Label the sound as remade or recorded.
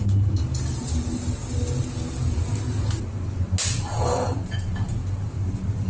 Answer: recorded